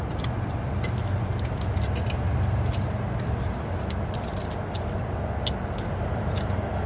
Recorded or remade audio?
recorded